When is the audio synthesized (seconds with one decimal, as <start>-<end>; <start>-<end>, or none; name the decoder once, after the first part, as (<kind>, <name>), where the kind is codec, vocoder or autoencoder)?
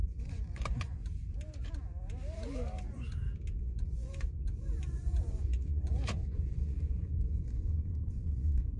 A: 0.0-1.0 (vocoder, Vocos); 3.6-8.8